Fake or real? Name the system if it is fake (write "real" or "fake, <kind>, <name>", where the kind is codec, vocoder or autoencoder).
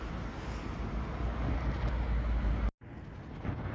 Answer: real